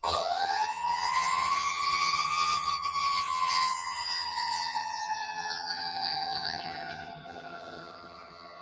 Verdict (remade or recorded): remade